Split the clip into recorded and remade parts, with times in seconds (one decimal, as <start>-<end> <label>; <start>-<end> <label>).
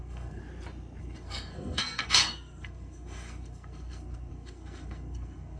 0.0-0.4 remade; 0.4-1.0 recorded; 1.0-5.6 remade